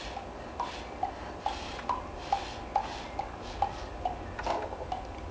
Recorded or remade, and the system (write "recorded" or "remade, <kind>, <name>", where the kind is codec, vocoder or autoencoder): recorded